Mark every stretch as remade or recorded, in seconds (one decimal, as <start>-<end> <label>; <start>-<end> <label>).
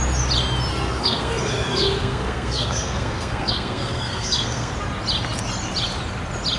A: 0.0-0.7 recorded; 0.7-4.7 remade; 4.7-6.6 recorded